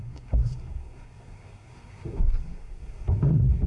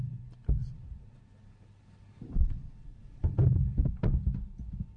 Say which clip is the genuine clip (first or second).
second